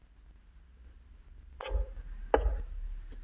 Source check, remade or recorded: recorded